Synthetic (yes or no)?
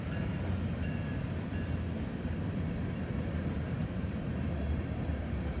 yes